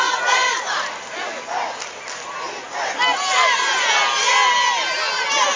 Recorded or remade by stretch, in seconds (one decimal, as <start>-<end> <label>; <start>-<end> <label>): 0.0-5.6 recorded